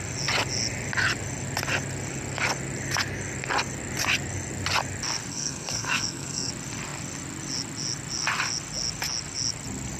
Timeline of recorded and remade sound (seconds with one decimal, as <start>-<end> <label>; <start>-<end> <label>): 0.0-5.3 recorded; 5.3-6.5 remade; 6.5-10.0 recorded